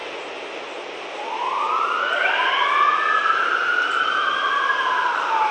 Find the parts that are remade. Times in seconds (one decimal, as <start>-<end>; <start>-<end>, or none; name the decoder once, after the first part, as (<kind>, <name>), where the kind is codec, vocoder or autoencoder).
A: none